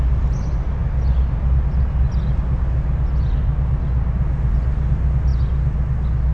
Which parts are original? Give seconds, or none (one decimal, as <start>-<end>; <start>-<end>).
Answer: 0.0-6.3